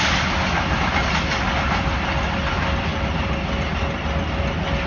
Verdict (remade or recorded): recorded